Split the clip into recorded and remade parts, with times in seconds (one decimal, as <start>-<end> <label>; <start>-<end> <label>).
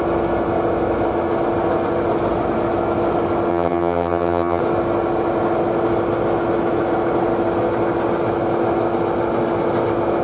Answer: 0.0-3.5 recorded; 3.5-4.6 remade; 4.6-10.2 recorded